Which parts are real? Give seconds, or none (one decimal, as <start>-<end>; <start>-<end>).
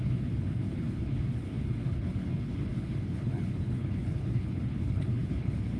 none